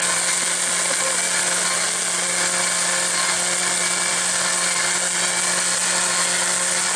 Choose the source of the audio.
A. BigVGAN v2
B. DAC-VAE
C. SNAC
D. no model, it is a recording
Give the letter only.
D